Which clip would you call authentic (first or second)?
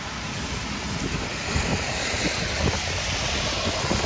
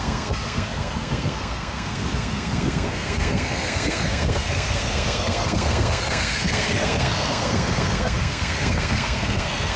first